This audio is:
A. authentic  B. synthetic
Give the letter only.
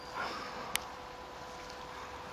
A